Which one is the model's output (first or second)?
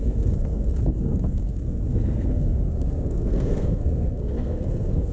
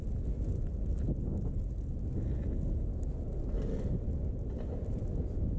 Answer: first